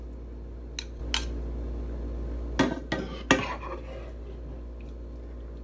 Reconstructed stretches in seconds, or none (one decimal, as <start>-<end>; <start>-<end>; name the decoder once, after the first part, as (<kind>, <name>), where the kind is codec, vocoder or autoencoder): none